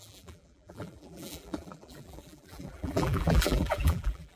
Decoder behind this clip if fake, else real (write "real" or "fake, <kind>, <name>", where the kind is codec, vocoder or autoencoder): fake, vocoder, BigVGAN v2